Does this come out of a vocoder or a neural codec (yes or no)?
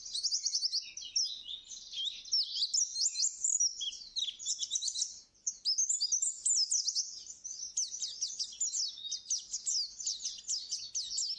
no